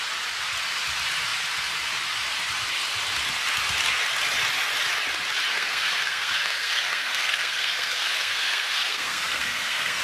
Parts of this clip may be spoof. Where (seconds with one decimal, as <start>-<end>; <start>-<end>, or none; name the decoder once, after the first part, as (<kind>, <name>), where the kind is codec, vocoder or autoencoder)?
5.5-10.0 (codec, SNAC)